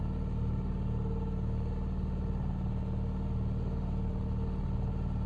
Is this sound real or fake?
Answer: real